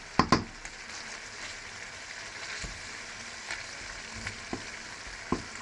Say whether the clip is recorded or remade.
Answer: recorded